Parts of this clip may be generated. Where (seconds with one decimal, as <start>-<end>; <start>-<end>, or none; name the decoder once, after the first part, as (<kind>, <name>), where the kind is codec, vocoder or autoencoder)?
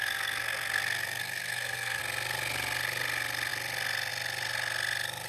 0.0-2.0 (codec, SNAC)